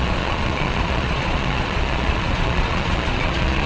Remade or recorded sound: remade